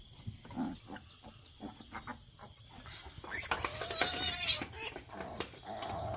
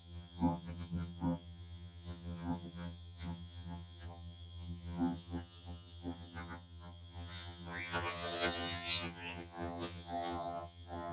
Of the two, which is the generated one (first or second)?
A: second